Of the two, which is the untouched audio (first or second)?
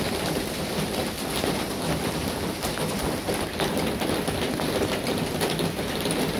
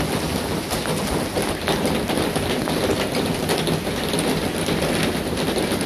second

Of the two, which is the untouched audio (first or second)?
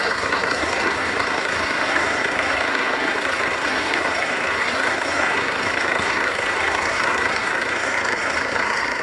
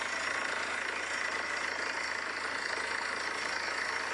second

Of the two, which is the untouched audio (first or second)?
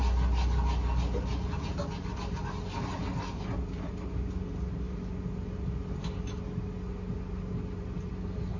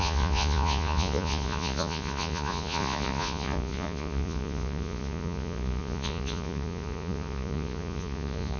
first